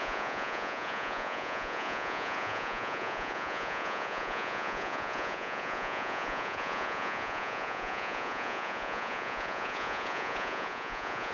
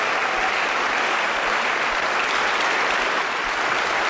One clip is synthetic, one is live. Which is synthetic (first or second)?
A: first